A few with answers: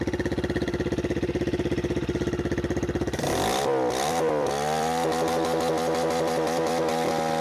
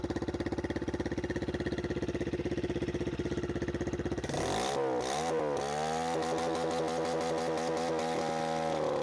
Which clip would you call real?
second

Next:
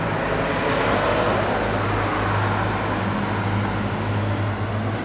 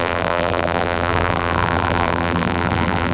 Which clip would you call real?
first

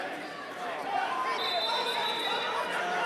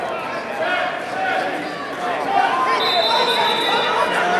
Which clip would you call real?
second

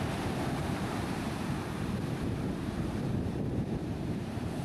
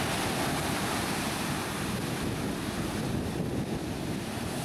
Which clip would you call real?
second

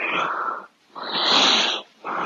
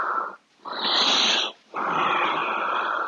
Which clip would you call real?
second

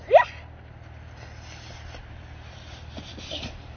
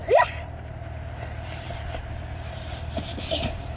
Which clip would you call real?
first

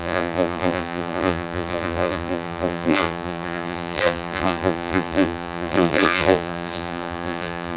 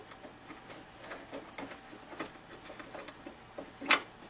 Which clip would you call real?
second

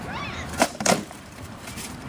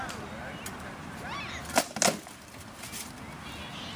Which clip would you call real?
second